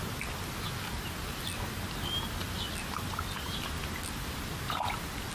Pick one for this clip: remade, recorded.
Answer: recorded